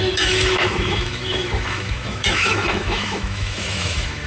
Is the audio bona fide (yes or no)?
no